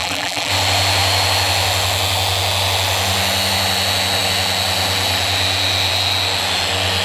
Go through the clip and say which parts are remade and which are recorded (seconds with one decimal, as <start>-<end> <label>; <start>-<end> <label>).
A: 0.0-0.5 remade; 0.5-7.0 recorded